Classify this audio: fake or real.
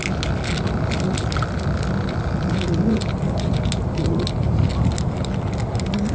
real